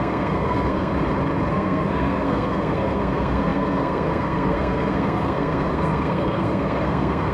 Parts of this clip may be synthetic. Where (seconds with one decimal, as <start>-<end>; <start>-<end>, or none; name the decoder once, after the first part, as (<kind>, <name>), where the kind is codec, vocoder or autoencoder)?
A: 0.0-0.9 (codec, SNAC); 1.5-7.3